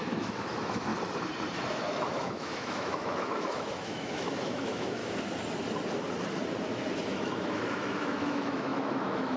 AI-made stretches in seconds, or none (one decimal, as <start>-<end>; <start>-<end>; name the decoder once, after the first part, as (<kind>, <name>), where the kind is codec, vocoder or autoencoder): 0.0-0.9 (autoencoder, DAC-VAE); 1.7-5.0; 7.1-9.4